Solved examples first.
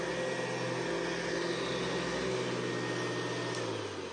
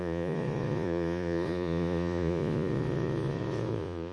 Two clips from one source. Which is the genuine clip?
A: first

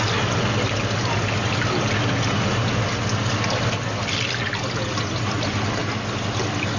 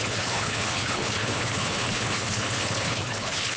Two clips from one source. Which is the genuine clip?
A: first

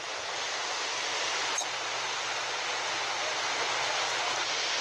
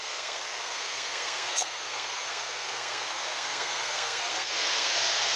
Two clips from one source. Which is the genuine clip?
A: first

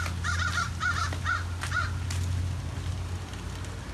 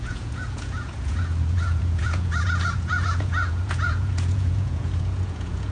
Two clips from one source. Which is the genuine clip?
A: first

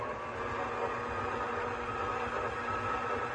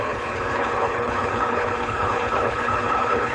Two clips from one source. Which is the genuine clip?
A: first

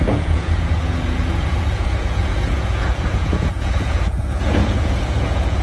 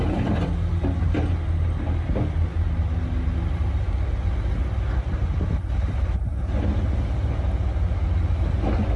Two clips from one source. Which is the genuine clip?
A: second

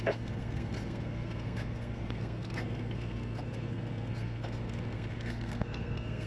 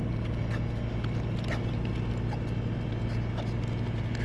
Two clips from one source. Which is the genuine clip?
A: second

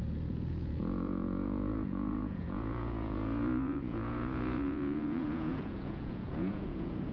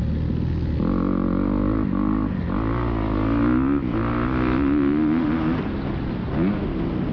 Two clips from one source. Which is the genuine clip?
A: second